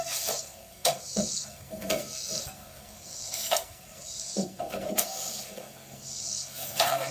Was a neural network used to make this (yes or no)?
yes